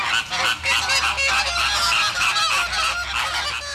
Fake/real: real